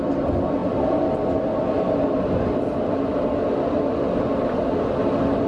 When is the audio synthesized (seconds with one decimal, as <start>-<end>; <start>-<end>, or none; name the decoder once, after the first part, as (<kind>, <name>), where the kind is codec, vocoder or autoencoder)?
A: none